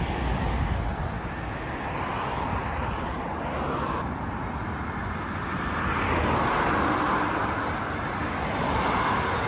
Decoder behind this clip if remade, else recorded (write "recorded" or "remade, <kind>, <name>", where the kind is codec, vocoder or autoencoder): recorded